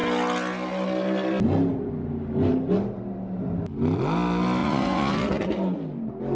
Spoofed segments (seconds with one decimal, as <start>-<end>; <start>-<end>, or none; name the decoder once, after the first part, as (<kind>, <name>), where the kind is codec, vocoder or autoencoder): 4.6-5.8 (vocoder, Vocos)